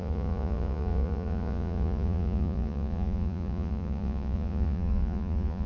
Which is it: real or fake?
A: fake